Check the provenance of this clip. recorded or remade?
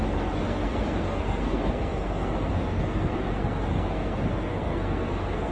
remade